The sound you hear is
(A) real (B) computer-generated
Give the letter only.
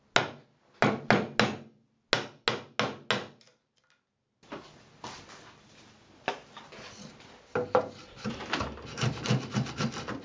A